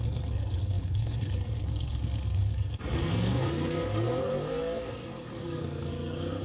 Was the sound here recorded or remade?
remade